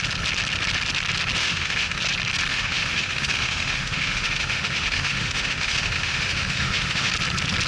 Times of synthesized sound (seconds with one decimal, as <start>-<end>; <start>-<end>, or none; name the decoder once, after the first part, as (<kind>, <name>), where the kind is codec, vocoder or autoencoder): 1.4-2.0 (autoencoder, DAC-VAE); 2.5-7.1